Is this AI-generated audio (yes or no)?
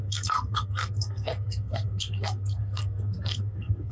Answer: yes